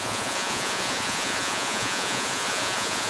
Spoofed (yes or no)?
yes